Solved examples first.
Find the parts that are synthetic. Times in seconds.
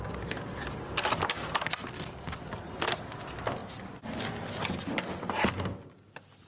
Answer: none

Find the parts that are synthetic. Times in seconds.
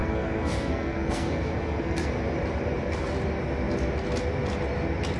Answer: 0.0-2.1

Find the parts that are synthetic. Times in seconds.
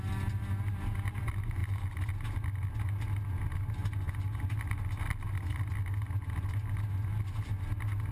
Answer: none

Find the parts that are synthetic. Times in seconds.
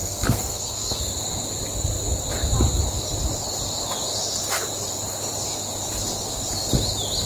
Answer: 0.0-1.0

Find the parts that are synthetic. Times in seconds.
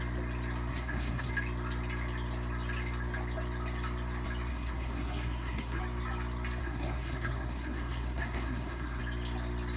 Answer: 0.7-1.3; 4.5-5.8; 6.6-9.0